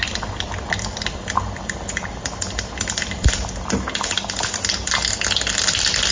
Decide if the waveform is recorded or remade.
recorded